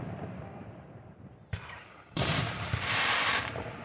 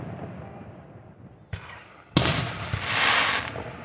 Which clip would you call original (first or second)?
second